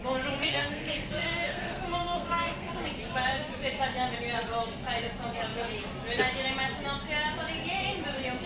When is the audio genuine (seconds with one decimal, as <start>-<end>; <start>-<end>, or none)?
0.0-0.4; 2.7-8.5